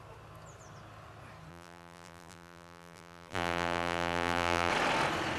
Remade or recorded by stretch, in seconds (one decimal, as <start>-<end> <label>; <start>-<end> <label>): 0.0-1.5 recorded; 1.5-4.7 remade; 4.7-5.4 recorded